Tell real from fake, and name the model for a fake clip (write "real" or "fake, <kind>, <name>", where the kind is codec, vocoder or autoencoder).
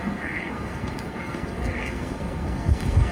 fake, codec, SNAC